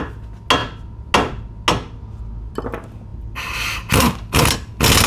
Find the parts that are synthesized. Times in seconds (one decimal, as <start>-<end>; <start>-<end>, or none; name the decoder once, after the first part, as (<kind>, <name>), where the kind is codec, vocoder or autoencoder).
none

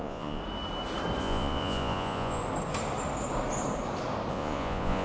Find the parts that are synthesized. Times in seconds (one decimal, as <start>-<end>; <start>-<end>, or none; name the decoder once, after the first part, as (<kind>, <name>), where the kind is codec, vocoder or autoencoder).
0.0-0.4 (vocoder, Vocos); 1.2-2.4; 4.3-5.0

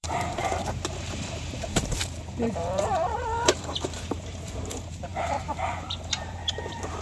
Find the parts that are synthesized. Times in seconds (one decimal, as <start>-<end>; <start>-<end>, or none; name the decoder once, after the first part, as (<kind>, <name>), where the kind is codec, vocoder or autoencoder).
0.0-7.0 (vocoder, BigVGAN v2)